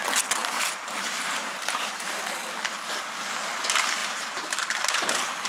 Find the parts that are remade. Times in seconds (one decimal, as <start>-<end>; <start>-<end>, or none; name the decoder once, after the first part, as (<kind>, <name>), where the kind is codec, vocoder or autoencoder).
0.4-2.3 (vocoder, BigVGAN v2); 4.0-5.5